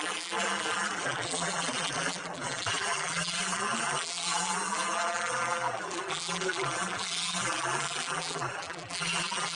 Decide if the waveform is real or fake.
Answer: fake